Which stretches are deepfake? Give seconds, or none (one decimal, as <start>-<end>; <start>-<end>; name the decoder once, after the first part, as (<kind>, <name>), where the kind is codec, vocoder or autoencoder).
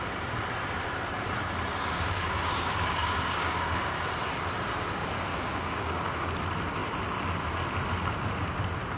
1.7-3.9 (codec, DAC); 5.3-6.3